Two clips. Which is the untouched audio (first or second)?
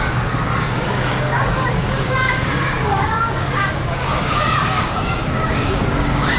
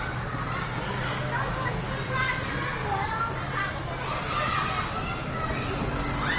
second